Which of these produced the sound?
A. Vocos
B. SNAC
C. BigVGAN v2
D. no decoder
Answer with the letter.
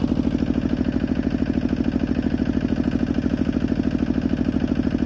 D